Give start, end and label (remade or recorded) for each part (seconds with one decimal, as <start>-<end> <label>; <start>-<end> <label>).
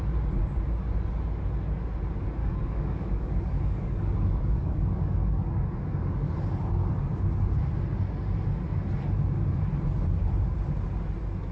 0.0-2.4 recorded; 2.4-6.3 remade; 6.3-11.5 recorded